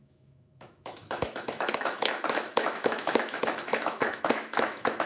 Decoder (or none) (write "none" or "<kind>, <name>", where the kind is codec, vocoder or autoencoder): autoencoder, DAC-VAE